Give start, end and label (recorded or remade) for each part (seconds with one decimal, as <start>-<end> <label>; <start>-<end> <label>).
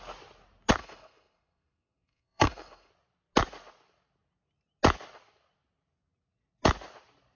0.0-0.8 recorded; 0.8-2.9 remade; 2.9-7.4 recorded